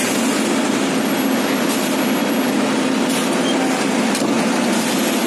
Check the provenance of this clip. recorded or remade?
recorded